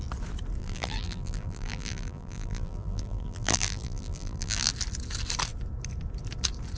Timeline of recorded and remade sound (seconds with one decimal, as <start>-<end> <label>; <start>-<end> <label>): 0.0-0.6 recorded; 0.6-4.7 remade; 4.7-6.8 recorded